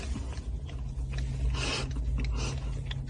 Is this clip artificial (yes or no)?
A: no